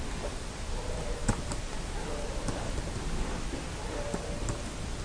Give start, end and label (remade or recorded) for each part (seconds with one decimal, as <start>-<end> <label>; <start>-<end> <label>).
0.0-5.0 recorded